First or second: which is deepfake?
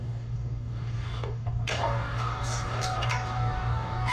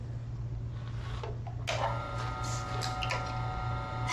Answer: first